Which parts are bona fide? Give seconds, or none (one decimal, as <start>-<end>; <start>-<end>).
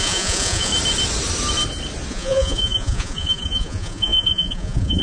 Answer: 0.7-2.1